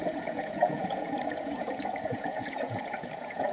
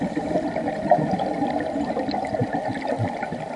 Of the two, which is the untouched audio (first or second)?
second